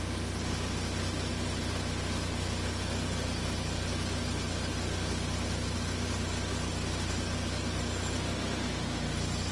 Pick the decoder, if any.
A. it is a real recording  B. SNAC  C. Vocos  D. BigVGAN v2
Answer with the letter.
A